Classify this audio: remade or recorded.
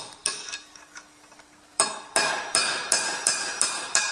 remade